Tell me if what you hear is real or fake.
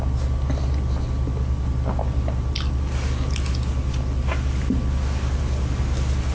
real